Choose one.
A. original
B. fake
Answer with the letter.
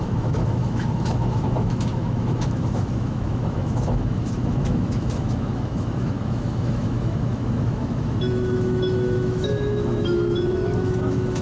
B